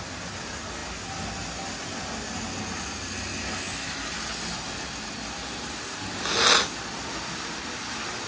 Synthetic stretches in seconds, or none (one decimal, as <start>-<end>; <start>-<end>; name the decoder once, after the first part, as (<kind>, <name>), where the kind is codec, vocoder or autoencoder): none